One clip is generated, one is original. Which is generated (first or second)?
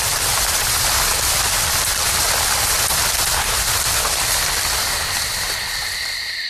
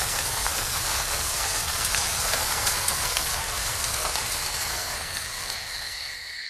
second